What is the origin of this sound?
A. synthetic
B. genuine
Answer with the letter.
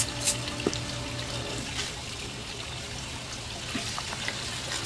B